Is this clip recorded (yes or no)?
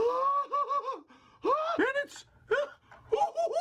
yes